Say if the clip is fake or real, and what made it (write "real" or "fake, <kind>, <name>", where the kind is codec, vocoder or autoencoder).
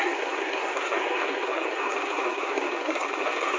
fake, codec, SNAC